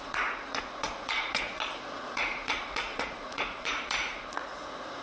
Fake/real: fake